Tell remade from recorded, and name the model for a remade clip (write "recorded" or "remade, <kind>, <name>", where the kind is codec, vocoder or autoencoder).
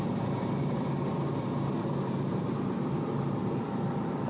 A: recorded